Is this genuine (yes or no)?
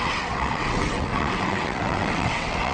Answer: no